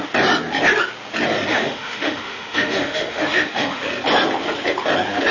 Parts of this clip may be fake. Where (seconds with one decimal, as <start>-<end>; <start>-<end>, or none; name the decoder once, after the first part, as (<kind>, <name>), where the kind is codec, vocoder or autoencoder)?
1.5-3.9 (autoencoder, DAC-VAE)